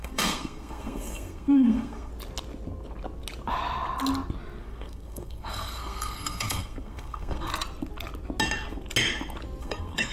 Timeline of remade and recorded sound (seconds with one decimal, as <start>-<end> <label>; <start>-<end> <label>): 0.0-2.1 remade; 2.1-4.6 recorded; 4.6-7.5 remade; 7.5-9.6 recorded; 9.6-10.1 remade